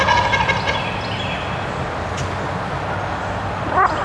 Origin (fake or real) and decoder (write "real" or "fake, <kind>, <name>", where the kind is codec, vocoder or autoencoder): real